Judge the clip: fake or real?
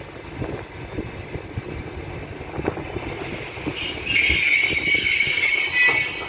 real